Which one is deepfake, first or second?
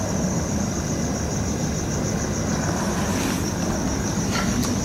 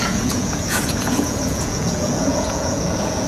second